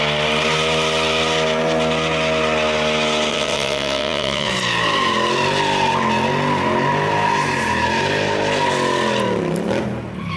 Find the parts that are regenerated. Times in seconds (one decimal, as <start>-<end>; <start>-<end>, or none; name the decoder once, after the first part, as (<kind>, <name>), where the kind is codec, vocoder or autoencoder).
3.3-4.5 (vocoder, WaveNeXt)